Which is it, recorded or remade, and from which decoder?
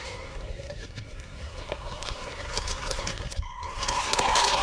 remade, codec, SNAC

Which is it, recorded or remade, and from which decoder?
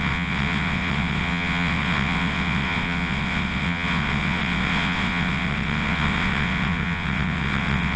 remade, vocoder, WaveNeXt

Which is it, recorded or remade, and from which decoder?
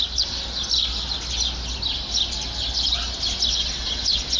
recorded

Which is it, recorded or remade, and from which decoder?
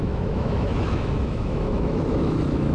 remade, autoencoder, DAC-VAE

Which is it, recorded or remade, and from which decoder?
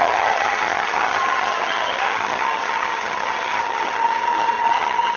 remade, vocoder, HiFi-GAN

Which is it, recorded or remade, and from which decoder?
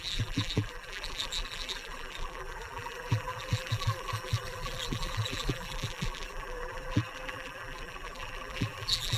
remade, vocoder, BigVGAN v2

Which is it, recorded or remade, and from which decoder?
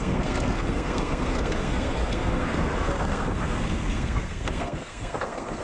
remade, codec, SNAC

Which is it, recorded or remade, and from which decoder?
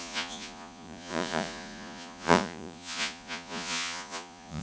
remade, vocoder, Vocos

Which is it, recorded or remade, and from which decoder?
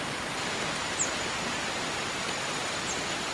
recorded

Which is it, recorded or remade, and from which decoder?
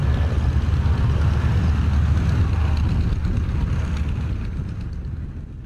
recorded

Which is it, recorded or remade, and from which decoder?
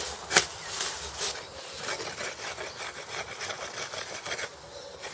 recorded